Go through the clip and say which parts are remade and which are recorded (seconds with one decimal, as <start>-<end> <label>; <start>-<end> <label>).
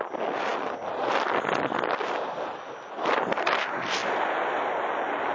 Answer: 0.0-5.3 recorded